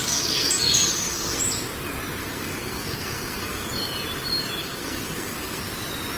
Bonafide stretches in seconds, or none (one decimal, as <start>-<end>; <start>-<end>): 1.4-2.2; 3.7-4.6; 5.6-6.2